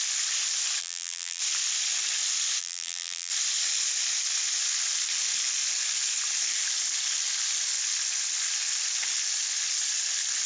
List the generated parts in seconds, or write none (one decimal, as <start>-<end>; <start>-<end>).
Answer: 0.8-1.4; 2.6-3.3